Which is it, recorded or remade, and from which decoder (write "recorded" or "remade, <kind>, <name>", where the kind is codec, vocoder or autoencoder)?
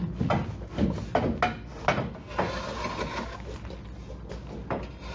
recorded